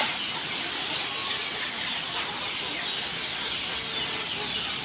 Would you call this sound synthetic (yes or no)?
no